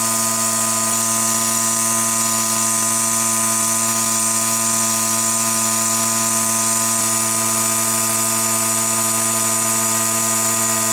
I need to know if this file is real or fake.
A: real